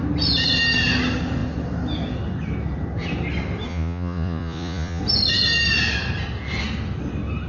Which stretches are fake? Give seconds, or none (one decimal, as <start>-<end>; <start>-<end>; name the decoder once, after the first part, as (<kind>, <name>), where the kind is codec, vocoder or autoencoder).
3.7-5.0 (vocoder, Vocos)